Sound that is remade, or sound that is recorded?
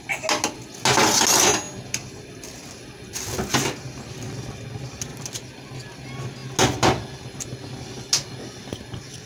recorded